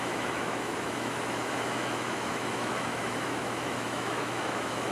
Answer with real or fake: fake